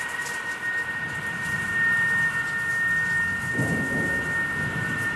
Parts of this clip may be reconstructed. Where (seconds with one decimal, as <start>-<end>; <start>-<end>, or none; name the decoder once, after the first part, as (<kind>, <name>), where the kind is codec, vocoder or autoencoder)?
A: none